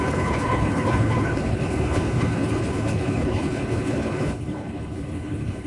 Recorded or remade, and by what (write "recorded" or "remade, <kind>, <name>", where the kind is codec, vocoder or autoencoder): remade, codec, HILCodec